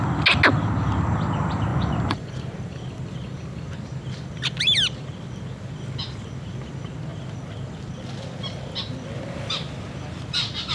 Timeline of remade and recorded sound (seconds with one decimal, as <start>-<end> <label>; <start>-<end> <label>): 0.0-1.7 recorded; 1.7-2.3 remade; 2.3-10.7 recorded